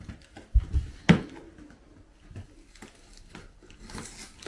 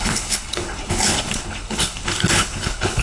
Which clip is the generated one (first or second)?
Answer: second